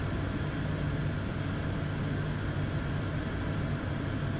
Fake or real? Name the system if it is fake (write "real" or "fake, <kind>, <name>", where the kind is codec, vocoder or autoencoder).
real